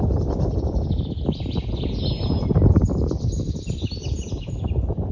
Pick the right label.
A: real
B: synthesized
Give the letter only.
A